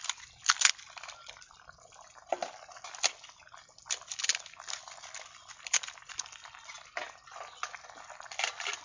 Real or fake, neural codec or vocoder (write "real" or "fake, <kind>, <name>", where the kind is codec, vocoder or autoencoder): real